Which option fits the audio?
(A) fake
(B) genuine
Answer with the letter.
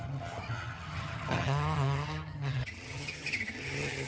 A